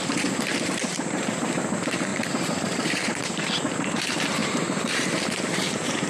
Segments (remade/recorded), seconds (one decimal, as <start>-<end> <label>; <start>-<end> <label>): 0.0-0.8 recorded; 0.8-1.4 remade; 1.4-2.1 recorded; 2.1-3.4 remade; 3.4-4.4 recorded; 4.4-6.1 remade